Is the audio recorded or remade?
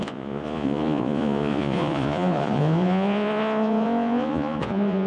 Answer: remade